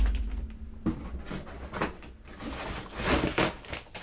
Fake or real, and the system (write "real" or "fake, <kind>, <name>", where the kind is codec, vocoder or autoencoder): real